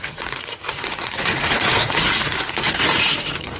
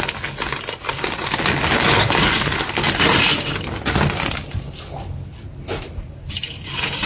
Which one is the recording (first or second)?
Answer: second